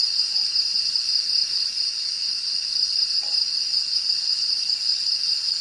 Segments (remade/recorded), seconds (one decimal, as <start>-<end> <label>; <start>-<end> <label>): 0.0-5.6 recorded